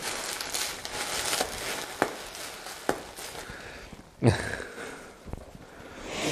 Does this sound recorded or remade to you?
recorded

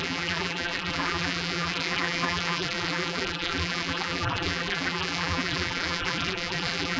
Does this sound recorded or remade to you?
remade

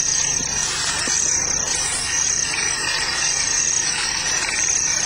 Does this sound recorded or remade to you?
remade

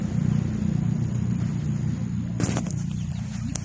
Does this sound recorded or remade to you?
recorded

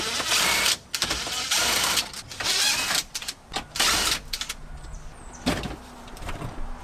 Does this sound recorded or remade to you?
remade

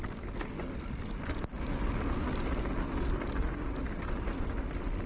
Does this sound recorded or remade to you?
remade